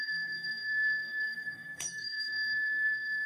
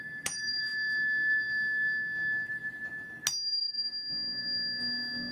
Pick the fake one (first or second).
first